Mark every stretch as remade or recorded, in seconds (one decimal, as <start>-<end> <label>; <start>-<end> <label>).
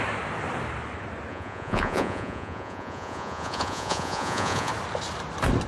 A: 0.0-1.3 recorded; 1.3-4.7 remade; 4.7-5.7 recorded